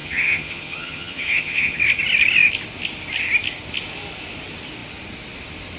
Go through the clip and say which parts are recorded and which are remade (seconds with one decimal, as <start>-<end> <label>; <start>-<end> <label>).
0.0-1.8 remade; 1.8-5.8 recorded